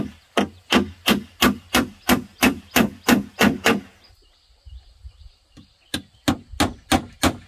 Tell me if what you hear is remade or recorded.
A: recorded